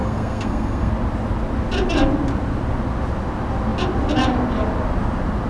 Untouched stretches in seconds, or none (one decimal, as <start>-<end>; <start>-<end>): 0.9-5.5